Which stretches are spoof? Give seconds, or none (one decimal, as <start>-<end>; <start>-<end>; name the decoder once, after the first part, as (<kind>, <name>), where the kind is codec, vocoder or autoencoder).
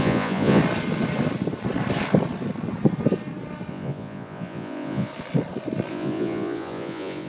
0.0-0.6 (vocoder, Vocos); 3.7-5.1; 5.9-7.3